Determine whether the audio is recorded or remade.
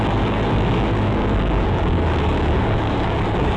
remade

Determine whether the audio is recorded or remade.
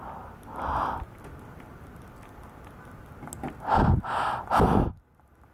recorded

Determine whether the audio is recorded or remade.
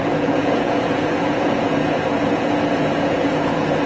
remade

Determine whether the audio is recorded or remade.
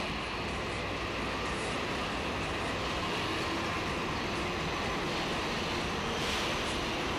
recorded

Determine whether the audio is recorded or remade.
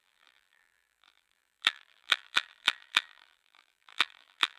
remade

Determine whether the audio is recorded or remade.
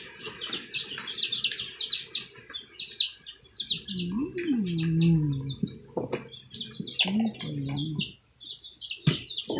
recorded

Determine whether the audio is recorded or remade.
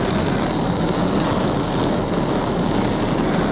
recorded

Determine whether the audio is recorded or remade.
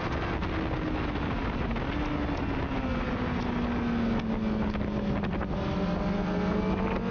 recorded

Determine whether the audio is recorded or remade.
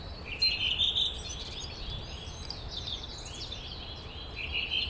recorded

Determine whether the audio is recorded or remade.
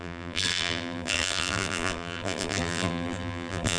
remade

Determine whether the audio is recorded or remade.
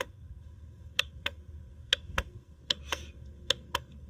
remade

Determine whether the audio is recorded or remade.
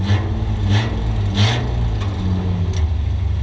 recorded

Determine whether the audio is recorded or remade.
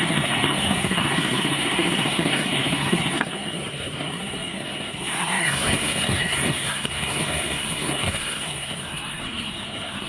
remade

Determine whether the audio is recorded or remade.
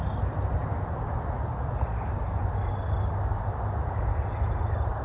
recorded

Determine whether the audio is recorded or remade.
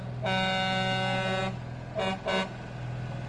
recorded